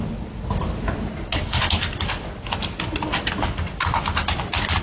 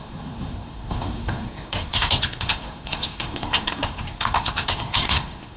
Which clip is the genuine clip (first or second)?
first